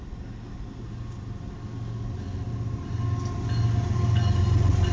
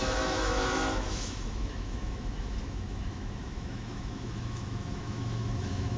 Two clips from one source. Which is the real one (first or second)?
first